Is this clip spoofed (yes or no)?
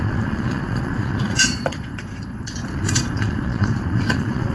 yes